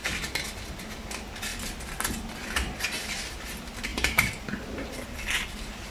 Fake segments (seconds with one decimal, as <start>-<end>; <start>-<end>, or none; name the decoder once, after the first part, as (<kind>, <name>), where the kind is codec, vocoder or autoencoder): 3.9-4.4 (vocoder, BigVGAN v2)